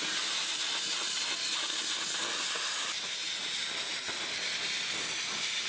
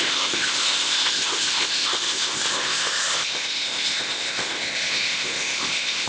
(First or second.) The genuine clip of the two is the first